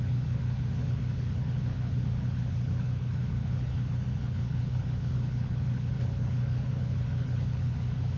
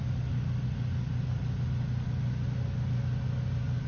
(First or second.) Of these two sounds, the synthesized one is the first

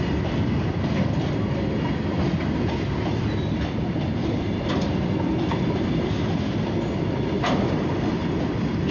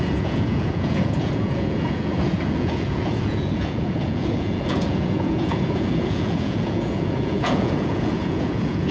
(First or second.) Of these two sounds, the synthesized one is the second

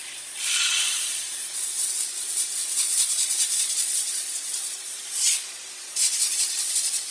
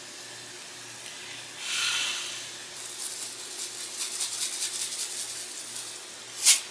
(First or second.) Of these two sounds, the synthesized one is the first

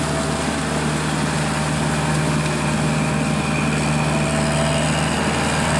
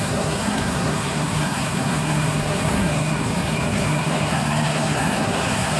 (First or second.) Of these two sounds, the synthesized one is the second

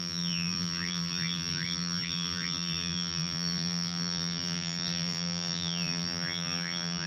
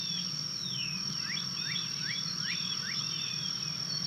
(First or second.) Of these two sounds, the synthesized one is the first